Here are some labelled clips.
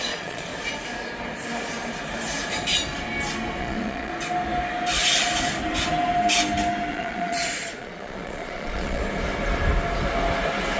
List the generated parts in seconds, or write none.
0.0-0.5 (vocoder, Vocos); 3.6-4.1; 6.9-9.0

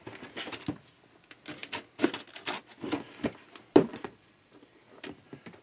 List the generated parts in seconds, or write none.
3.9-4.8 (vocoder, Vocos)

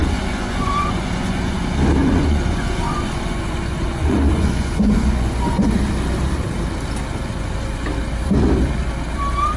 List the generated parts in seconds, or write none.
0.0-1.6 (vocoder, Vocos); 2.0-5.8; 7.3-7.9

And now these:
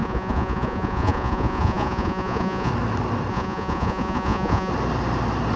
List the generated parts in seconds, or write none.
0.0-2.7 (vocoder, Vocos); 3.3-4.7

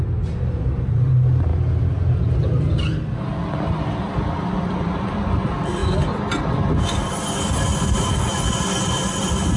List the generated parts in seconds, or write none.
none